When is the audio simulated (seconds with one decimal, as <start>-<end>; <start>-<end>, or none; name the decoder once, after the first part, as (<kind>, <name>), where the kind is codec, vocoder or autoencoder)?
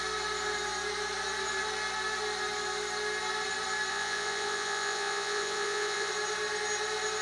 3.9-6.1 (vocoder, Vocos)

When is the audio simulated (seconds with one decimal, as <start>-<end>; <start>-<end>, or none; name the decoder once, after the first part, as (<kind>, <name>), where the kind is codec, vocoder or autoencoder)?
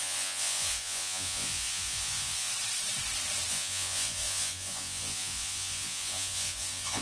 0.0-2.5 (vocoder, Vocos); 3.5-7.0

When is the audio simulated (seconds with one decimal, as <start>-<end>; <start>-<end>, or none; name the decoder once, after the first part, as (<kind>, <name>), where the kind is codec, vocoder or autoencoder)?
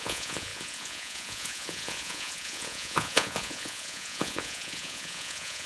0.0-5.7 (vocoder, Vocos)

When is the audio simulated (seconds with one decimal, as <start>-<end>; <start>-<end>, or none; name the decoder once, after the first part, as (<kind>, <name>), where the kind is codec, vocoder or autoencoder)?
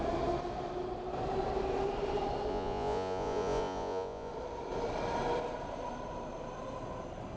2.5-4.3 (vocoder, Vocos)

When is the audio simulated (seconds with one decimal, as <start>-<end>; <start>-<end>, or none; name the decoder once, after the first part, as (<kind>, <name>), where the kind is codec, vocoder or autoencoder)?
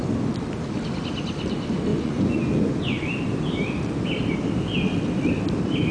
1.9-3.0 (vocoder, Vocos)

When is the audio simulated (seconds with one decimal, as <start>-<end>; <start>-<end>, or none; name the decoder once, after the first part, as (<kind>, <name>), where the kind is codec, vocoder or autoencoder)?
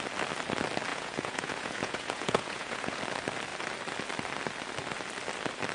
0.9-3.0 (vocoder, Vocos)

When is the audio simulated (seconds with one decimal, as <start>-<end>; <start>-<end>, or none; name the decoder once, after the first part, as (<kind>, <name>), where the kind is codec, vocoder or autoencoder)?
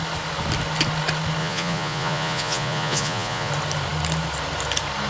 1.4-3.5 (vocoder, Vocos)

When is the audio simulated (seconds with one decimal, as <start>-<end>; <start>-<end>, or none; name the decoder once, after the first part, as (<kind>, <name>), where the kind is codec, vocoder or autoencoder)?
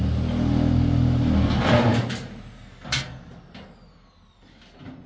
none